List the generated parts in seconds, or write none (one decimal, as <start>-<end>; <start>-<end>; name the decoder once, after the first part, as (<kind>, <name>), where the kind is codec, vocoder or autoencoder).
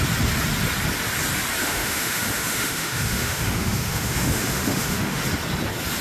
1.6-5.2 (autoencoder, DAC-VAE)